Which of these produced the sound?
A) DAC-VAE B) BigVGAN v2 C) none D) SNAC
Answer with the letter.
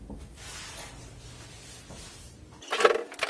C